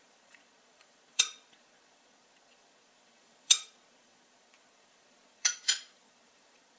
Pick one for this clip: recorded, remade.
remade